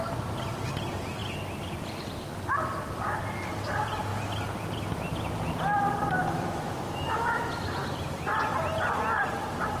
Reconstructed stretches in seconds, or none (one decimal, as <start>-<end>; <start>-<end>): 6.2-7.4